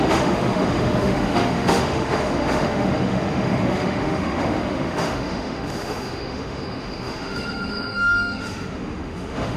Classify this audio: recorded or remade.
remade